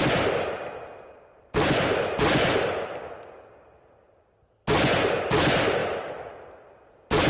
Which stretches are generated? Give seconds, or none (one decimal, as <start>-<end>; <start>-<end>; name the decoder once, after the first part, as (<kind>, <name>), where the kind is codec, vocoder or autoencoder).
none